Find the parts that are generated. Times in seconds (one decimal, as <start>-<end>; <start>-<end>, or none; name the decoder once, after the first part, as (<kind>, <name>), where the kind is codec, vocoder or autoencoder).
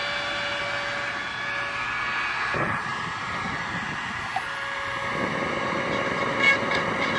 none